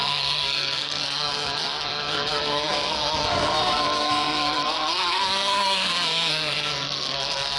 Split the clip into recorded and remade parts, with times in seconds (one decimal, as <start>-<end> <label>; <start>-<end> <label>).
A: 0.0-7.6 remade